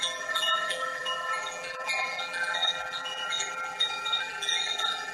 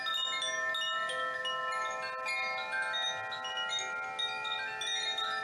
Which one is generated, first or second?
first